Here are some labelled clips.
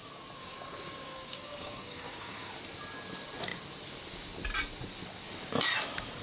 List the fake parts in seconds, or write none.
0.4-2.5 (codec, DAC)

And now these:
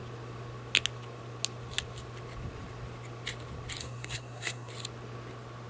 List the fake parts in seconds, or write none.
3.8-4.7 (codec, SNAC)

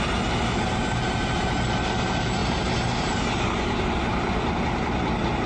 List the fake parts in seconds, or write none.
none

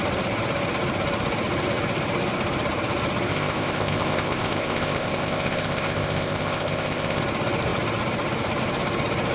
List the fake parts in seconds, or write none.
3.3-7.2 (codec, ZipCodec)

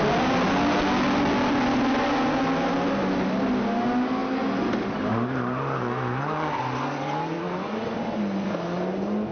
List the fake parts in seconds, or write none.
none